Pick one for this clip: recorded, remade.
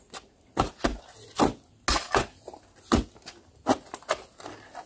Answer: recorded